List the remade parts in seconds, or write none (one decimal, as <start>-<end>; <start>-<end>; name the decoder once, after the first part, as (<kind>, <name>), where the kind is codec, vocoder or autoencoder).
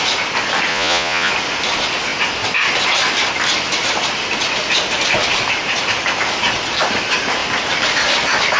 0.7-1.3 (vocoder, Vocos)